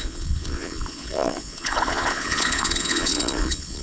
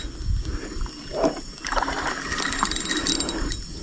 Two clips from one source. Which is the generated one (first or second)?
first